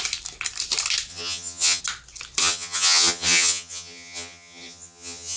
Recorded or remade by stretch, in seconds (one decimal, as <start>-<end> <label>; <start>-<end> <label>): 0.0-1.1 recorded; 1.1-1.8 remade; 1.8-2.4 recorded; 2.4-5.4 remade